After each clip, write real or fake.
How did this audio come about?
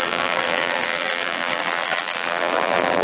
fake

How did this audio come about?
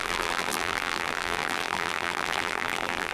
fake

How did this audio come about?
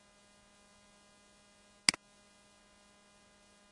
real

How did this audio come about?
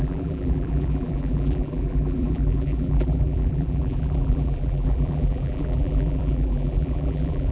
fake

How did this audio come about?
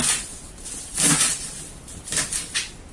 real